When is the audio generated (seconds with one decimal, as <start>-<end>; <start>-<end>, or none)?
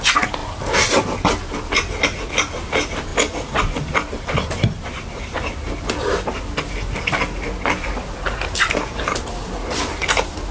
none